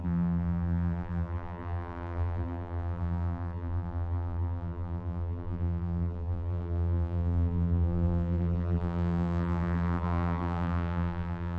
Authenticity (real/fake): fake